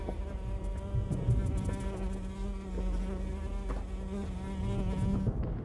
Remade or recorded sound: recorded